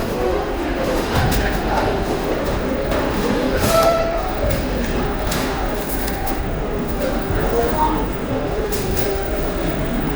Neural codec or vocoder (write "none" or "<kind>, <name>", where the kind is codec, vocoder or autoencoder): autoencoder, DAC-VAE